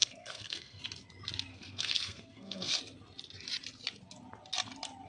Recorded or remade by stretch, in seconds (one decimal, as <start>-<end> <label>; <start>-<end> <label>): 0.0-0.8 remade; 0.8-1.5 recorded; 1.5-2.8 remade; 2.8-5.1 recorded